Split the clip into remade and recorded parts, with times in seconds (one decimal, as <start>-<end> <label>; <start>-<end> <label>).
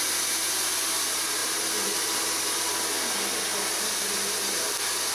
0.0-3.5 recorded; 3.5-4.4 remade; 4.4-5.1 recorded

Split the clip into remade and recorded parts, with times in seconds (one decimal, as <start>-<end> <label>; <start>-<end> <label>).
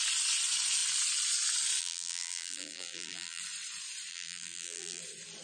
0.0-1.8 recorded; 1.8-3.4 remade; 3.4-4.1 recorded; 4.1-5.0 remade; 5.0-5.4 recorded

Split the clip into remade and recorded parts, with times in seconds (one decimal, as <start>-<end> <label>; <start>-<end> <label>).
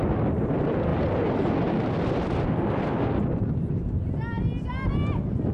0.0-5.5 recorded